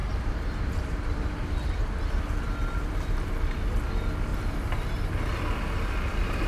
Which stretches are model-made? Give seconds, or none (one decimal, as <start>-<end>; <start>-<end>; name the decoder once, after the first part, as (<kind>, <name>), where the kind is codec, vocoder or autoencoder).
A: 0.0-3.9 (vocoder, BigVGAN v2); 4.3-5.1